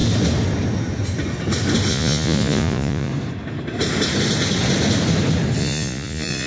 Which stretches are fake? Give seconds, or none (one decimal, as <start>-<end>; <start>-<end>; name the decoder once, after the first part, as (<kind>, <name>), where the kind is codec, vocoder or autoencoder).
1.9-3.1 (vocoder, Vocos); 5.6-6.5